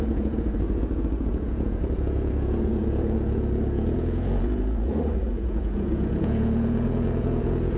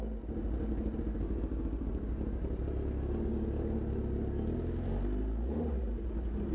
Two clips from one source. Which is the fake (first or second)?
first